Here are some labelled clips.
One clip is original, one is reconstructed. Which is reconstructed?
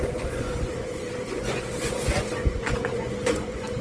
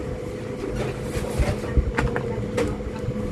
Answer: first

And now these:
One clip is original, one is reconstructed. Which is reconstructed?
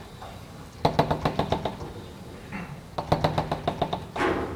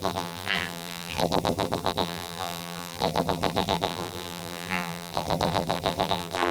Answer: second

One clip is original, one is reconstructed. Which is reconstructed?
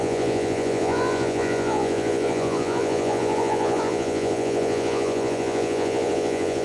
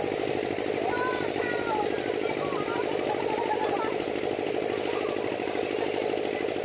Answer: first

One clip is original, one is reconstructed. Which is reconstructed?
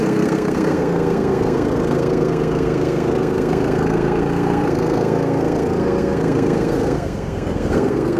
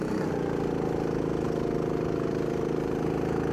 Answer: first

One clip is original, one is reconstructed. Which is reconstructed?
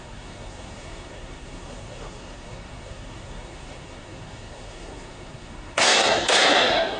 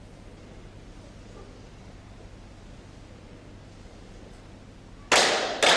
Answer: first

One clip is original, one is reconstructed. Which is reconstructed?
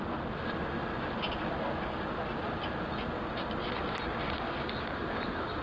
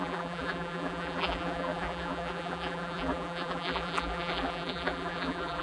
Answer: second